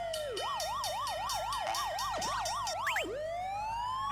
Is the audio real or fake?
real